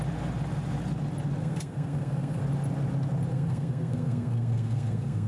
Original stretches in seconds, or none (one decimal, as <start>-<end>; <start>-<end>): 0.0-1.4; 2.4-3.3